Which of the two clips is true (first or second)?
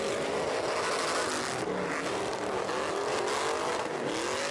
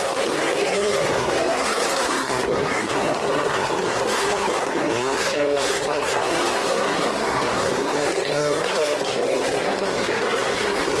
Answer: first